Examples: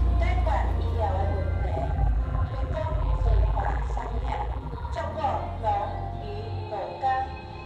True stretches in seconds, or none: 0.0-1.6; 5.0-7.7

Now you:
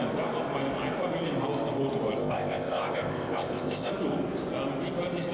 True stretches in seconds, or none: 0.0-2.2; 3.9-5.3

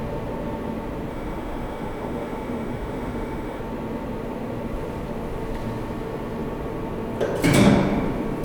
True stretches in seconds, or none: 0.0-1.1; 3.6-8.4

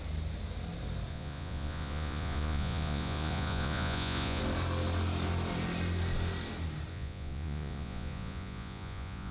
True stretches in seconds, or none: 0.0-1.1; 4.4-6.9

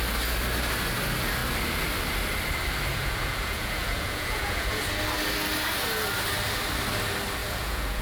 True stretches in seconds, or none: 0.0-2.9; 4.8-7.4

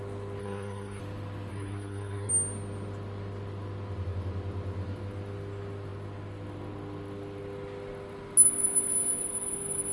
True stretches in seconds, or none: 0.0-0.4; 1.0-1.5; 2.3-9.9

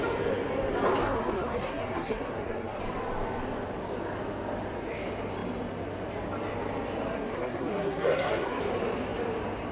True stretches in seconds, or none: 0.0-1.0; 2.8-7.1; 8.6-9.7

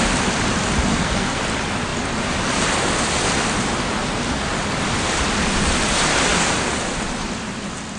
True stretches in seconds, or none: 0.0-0.9; 1.4-8.0